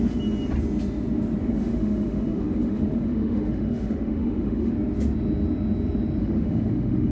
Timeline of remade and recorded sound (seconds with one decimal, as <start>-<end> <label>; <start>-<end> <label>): 0.0-1.4 recorded; 1.4-4.7 remade; 4.7-6.2 recorded; 6.2-7.1 remade